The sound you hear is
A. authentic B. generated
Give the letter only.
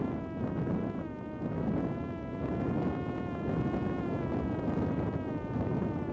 A